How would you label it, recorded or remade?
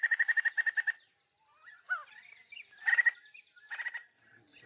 recorded